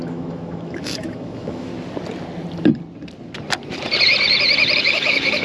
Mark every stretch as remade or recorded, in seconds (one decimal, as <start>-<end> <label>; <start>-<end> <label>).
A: 0.0-1.7 remade; 1.7-4.8 recorded; 4.8-5.4 remade